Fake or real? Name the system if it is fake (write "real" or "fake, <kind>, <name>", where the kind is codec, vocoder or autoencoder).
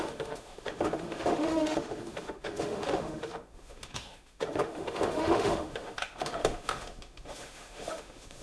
fake, autoencoder, DAC-VAE